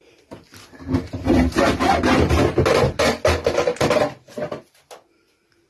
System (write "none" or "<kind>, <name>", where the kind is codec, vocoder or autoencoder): none